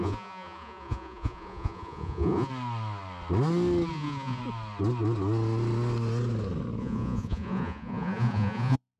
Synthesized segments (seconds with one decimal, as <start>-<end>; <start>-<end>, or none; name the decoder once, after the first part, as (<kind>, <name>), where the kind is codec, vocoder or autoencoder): 0.0-2.5 (vocoder, Vocos); 3.9-4.4; 6.8-9.0